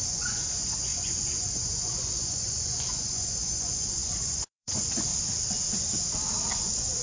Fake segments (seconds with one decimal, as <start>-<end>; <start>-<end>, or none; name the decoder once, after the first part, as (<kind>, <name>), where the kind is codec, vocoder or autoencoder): 0.0-5.1 (vocoder, Vocos); 6.5-7.0